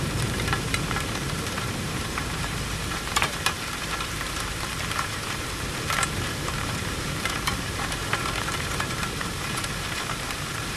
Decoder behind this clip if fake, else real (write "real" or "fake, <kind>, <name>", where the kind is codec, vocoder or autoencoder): fake, vocoder, BigVGAN v2